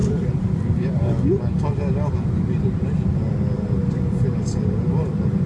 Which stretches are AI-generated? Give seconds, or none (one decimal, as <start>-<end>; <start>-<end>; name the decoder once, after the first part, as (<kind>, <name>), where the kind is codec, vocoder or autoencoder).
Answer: 0.0-2.6 (vocoder, BigVGAN v2); 3.8-5.5